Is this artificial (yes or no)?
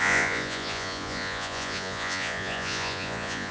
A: yes